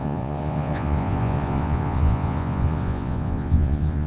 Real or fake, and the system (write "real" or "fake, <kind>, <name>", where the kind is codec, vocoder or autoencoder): fake, vocoder, Vocos